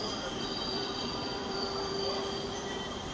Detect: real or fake fake